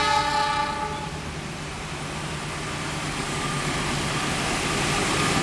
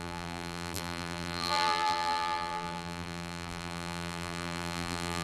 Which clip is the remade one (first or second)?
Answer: second